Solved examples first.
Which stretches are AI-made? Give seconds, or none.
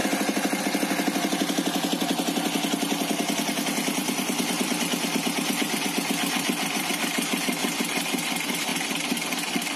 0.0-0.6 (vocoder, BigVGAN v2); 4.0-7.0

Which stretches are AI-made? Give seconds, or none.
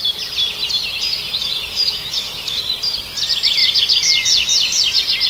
1.3-2.7 (autoencoder, DAC-VAE)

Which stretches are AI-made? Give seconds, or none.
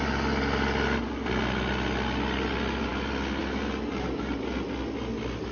none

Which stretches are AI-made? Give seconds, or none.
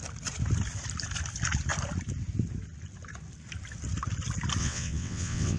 4.6-5.6 (vocoder, WaveNeXt)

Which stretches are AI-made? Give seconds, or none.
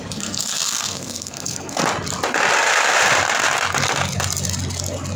0.0-1.8 (codec, SNAC)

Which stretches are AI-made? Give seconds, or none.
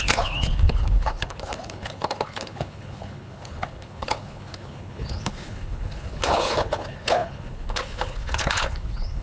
0.0-9.2 (codec, HILCodec)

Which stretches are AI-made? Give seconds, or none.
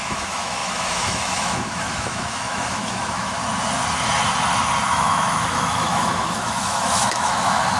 0.0-3.4 (autoencoder, DAC-VAE); 4.9-7.8